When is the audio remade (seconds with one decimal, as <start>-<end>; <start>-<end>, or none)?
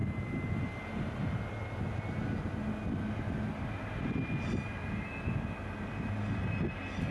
none